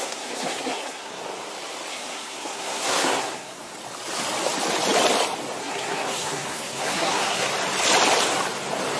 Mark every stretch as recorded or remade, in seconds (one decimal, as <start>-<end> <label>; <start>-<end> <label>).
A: 0.0-1.2 remade; 1.2-1.9 recorded; 1.9-3.7 remade; 3.7-5.6 recorded; 5.6-7.5 remade; 7.5-9.0 recorded